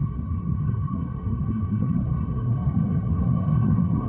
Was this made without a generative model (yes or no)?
no